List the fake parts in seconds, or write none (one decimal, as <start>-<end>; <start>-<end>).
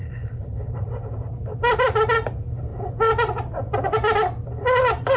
0.0-0.7